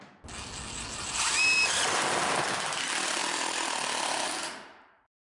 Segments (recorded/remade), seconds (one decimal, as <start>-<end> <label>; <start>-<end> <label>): 0.0-5.3 recorded